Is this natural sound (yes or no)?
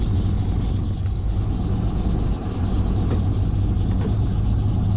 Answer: yes